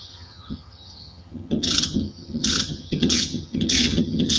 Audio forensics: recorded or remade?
remade